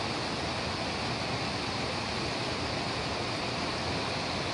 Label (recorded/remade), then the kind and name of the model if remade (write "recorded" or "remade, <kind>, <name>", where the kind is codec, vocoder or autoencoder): recorded